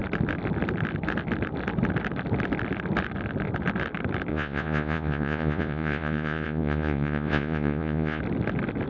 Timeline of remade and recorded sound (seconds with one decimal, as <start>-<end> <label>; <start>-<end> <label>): 0.0-4.3 recorded; 4.3-8.2 remade; 8.2-8.9 recorded